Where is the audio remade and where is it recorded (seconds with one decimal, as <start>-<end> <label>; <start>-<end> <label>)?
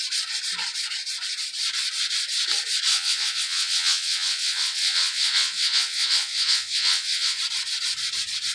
0.0-2.9 recorded; 2.9-7.4 remade; 7.4-8.5 recorded